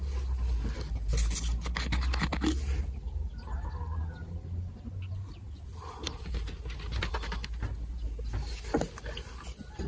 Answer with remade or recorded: recorded